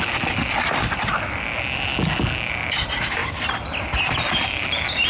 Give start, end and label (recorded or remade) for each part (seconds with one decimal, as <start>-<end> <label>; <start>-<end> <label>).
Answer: 0.0-5.1 recorded